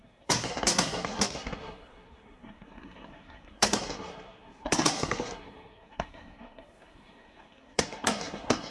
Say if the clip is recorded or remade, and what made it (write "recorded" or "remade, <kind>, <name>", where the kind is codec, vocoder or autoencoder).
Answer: remade, codec, SNAC